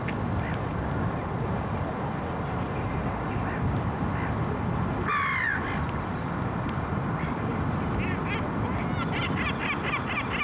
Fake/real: real